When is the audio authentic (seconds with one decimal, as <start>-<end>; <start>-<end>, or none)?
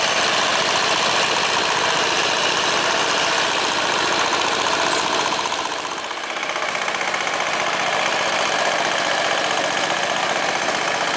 0.0-11.2